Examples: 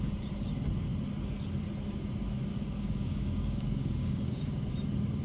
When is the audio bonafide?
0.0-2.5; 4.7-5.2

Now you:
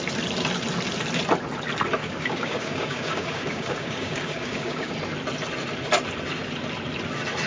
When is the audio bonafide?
0.0-2.0; 4.9-7.5

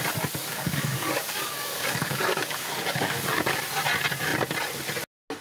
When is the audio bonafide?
0.0-0.4; 3.6-5.4

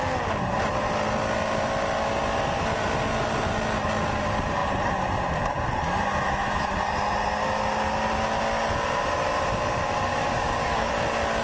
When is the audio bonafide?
0.0-10.1; 10.9-11.4